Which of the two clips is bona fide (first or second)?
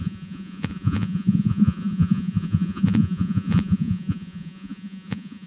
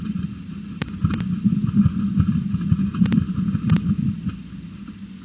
second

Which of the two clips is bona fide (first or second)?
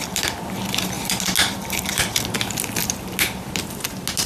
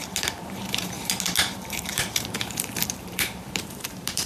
first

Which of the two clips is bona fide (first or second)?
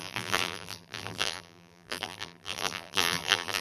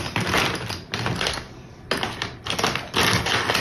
second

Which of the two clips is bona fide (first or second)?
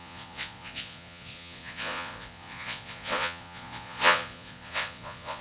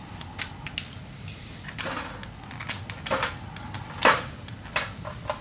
second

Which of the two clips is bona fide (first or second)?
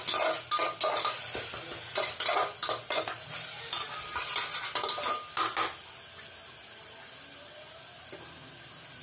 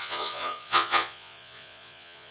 first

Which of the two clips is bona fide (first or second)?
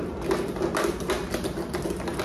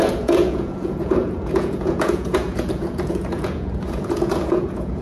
first